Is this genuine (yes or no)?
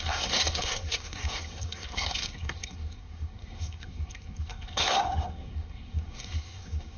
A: no